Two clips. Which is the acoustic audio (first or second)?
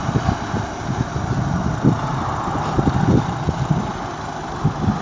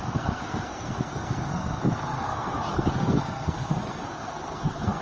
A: first